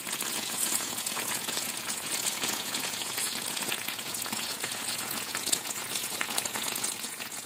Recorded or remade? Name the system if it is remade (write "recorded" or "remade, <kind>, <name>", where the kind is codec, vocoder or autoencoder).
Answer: remade, vocoder, Vocos